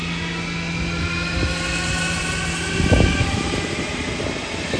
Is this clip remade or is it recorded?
recorded